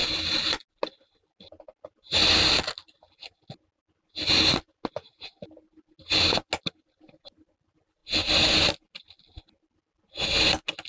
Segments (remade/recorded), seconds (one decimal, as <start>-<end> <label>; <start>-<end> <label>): 0.0-10.9 recorded

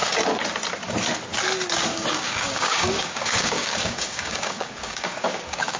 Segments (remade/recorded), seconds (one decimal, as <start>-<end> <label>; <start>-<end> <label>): 0.0-1.9 recorded; 1.9-5.8 remade

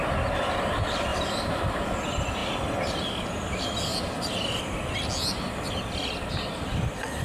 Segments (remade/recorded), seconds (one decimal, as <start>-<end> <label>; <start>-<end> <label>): 0.0-1.1 recorded; 1.1-1.8 remade; 1.8-2.4 recorded; 2.4-3.0 remade; 3.0-7.2 recorded

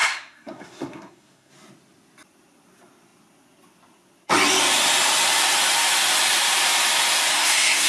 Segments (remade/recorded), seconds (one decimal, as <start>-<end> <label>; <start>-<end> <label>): 0.0-1.5 remade; 1.5-7.3 recorded; 7.3-7.9 remade

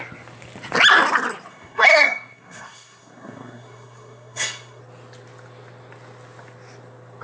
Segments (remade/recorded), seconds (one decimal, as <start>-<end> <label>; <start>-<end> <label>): 0.0-1.5 recorded; 1.5-4.8 remade; 4.8-7.2 recorded

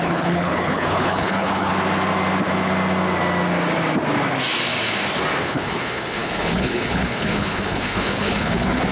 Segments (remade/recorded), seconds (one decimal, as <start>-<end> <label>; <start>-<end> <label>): 0.0-1.7 remade; 1.7-5.4 recorded; 5.4-8.9 remade